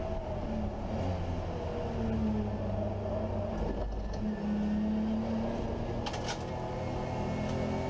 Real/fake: real